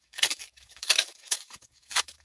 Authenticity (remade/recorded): remade